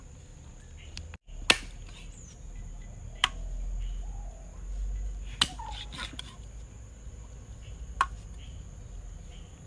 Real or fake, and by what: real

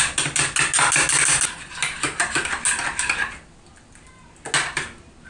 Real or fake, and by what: real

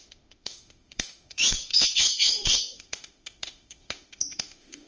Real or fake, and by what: fake, autoencoder, DAC-VAE